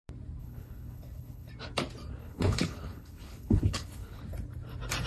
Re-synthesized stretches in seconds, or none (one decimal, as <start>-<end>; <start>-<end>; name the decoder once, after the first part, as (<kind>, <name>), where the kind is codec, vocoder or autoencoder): 0.4-1.5 (codec, HILCodec); 2.2-4.2